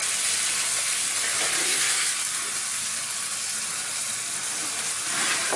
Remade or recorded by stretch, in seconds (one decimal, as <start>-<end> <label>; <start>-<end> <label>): 0.0-1.6 recorded; 1.6-2.1 remade; 2.1-5.6 recorded